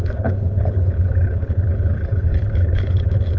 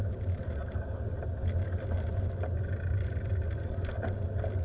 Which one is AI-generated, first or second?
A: first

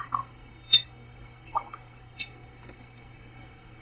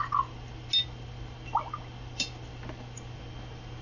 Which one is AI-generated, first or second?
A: first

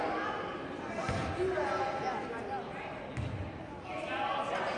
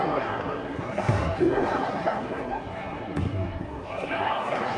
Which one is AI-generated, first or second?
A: second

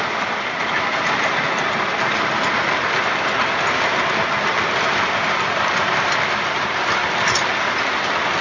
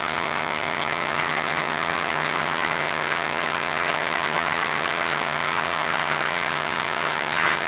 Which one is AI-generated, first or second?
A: second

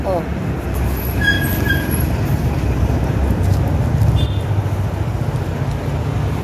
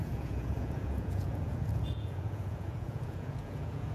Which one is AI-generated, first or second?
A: second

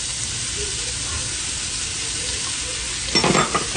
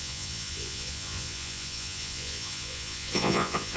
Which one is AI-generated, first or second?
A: second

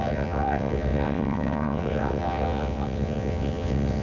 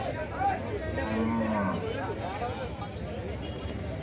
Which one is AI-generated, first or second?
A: first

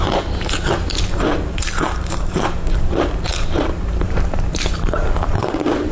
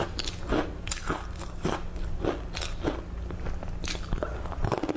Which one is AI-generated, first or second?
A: first